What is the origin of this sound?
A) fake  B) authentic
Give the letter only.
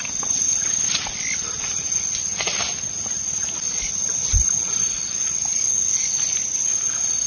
B